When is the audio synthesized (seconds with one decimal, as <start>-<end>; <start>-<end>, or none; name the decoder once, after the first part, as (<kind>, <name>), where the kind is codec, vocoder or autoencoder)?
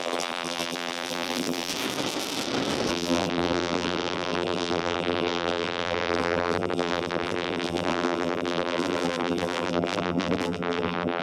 0.0-1.7 (vocoder, BigVGAN v2); 2.9-11.2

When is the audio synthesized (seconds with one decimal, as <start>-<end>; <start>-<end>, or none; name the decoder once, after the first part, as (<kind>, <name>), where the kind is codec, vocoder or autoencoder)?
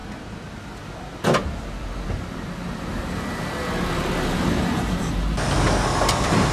none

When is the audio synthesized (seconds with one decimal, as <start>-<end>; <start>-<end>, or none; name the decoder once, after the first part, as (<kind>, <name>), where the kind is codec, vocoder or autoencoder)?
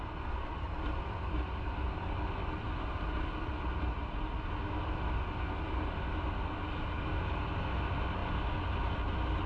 none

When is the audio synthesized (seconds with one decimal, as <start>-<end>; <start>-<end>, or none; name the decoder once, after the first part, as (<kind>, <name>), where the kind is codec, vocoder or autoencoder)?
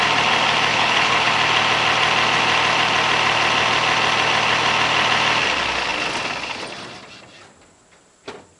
0.7-1.3 (codec, HILCodec)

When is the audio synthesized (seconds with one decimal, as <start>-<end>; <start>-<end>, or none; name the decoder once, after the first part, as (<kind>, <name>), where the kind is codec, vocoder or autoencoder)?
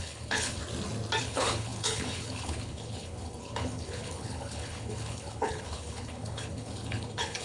0.0-0.6 (codec, HILCodec); 1.2-7.4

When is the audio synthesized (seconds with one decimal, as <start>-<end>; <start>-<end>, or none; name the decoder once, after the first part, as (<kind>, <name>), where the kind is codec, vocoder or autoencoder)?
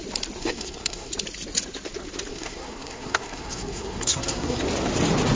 0.4-1.1 (codec, SNAC); 2.3-4.6